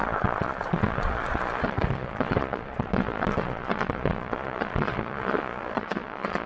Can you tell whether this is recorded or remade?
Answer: remade